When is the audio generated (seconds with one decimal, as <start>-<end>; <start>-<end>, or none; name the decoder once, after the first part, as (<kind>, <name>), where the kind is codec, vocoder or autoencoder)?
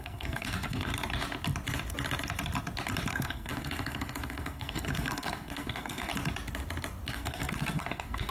0.0-0.9 (codec, SNAC); 3.1-6.1; 7.1-8.3